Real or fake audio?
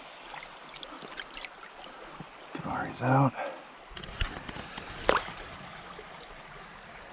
real